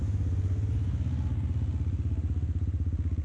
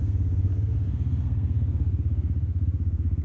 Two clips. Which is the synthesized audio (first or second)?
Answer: second